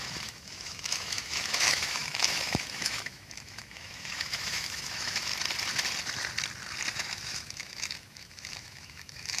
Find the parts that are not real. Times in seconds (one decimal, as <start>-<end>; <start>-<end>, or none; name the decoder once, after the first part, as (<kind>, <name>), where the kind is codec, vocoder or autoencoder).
0.0-5.3 (autoencoder, DAC-VAE); 6.9-9.4